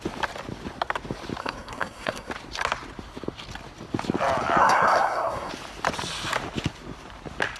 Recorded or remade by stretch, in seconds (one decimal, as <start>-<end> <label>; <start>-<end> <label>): 0.0-1.4 recorded; 1.4-2.3 remade; 2.3-4.6 recorded; 4.6-5.5 remade; 5.5-7.6 recorded